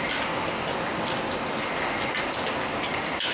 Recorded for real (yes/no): yes